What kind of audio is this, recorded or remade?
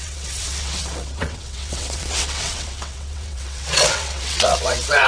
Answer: remade